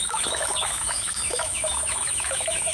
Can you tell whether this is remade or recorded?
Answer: remade